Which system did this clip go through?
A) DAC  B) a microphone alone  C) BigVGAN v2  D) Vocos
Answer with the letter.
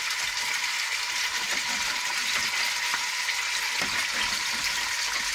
B